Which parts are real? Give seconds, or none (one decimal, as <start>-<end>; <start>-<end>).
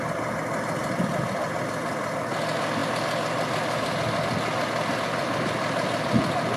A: 0.0-6.6